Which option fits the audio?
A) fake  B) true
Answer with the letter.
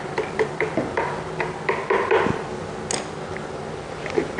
B